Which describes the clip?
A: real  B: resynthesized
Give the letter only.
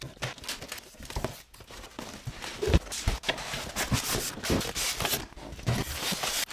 A